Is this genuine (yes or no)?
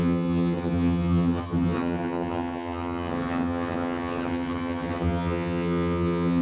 no